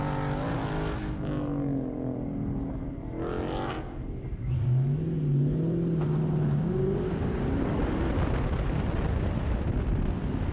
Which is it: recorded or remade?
recorded